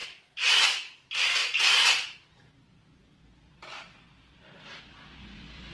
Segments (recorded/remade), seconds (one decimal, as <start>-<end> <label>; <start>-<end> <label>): 0.0-0.6 recorded; 0.6-5.7 remade